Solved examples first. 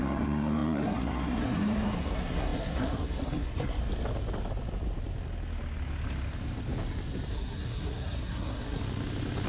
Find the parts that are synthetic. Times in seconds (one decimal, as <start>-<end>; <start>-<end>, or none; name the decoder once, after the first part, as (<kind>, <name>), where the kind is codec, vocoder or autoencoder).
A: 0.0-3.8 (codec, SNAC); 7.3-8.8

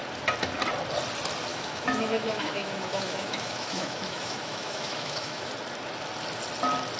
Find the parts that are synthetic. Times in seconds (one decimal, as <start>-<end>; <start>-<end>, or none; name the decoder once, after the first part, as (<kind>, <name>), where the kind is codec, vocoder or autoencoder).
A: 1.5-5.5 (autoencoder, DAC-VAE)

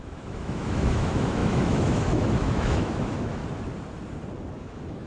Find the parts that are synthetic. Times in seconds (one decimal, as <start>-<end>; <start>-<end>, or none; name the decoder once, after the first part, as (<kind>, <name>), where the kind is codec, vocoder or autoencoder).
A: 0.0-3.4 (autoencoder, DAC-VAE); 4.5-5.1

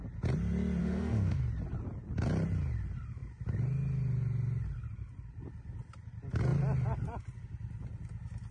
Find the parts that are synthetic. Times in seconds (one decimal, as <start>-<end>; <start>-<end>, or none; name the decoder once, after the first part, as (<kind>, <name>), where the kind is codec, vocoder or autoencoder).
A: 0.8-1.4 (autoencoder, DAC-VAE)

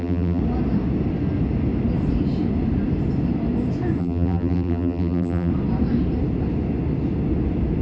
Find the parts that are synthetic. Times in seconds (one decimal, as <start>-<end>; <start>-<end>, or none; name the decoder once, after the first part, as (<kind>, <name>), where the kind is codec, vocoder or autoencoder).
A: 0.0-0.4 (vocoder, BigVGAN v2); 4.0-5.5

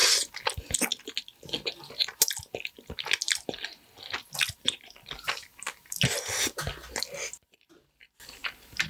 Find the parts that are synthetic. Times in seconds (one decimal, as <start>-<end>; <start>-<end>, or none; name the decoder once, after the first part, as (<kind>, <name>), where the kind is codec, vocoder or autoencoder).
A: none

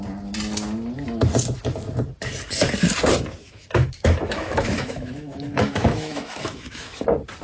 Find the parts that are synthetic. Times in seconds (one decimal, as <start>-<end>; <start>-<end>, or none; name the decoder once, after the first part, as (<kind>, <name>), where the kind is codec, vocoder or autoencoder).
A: 3.4-7.0 (autoencoder, DAC-VAE)

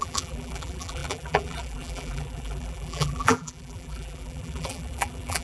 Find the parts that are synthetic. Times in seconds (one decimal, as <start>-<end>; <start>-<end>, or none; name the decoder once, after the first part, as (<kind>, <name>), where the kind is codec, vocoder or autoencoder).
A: 0.0-5.4 (vocoder, BigVGAN v2)